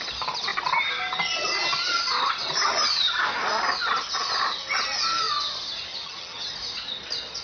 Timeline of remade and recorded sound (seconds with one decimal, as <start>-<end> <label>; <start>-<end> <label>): 0.0-5.9 recorded; 5.9-6.5 remade; 6.5-7.4 recorded